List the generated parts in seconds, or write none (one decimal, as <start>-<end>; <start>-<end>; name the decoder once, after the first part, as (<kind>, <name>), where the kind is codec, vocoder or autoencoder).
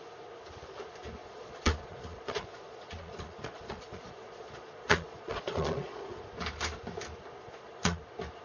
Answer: 1.2-6.2 (vocoder, Vocos); 7.4-8.0